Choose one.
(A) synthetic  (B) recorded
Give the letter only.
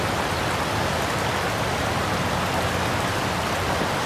B